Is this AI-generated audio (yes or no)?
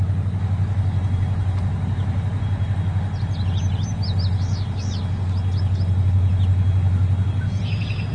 no